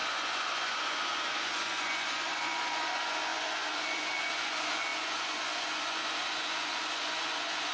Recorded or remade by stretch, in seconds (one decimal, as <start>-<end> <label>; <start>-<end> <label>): 0.0-7.7 remade